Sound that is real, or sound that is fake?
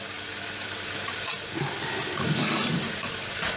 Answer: real